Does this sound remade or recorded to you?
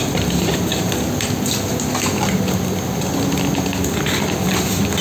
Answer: remade